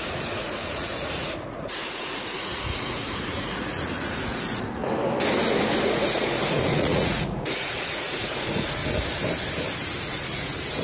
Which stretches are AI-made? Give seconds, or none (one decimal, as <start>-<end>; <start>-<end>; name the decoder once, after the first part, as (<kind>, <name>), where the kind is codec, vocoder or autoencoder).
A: 0.0-4.8 (vocoder, Vocos); 5.8-8.8; 10.0-10.8